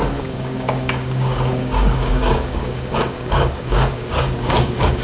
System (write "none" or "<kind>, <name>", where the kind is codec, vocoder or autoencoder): codec, DAC